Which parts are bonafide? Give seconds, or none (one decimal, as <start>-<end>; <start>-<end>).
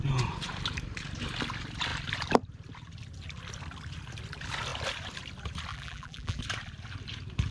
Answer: 0.0-5.7; 6.4-7.5